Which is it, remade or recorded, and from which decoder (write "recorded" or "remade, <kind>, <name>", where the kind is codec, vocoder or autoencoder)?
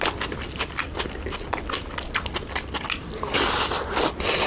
recorded